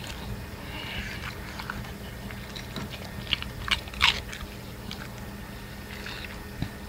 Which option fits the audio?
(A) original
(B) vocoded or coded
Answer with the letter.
A